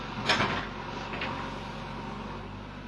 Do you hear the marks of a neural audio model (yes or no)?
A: no